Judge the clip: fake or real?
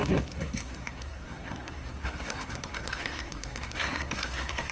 fake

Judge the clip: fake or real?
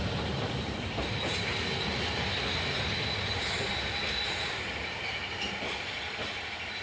real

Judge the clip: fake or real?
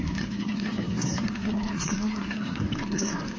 fake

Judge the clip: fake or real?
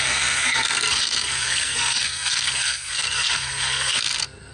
fake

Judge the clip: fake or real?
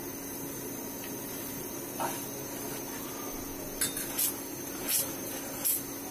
real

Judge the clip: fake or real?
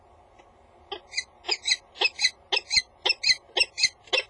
real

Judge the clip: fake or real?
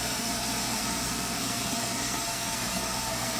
fake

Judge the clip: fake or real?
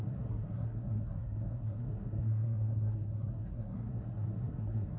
fake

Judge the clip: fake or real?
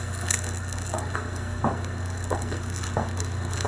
fake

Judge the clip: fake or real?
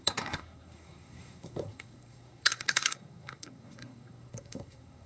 fake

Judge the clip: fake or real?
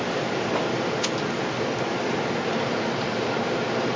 real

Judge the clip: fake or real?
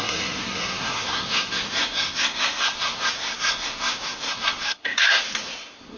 fake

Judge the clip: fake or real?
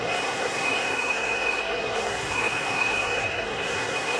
fake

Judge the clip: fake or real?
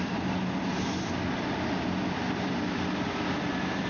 real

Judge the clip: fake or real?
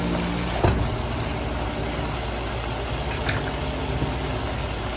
real